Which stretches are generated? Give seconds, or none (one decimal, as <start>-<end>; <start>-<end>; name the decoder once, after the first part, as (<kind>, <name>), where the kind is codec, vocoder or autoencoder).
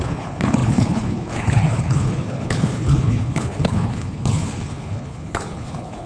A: 0.0-6.1 (codec, HILCodec)